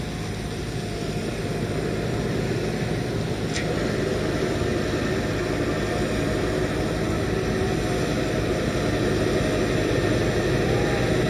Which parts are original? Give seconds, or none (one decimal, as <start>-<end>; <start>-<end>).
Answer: 0.0-11.3